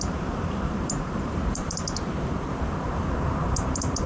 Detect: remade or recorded remade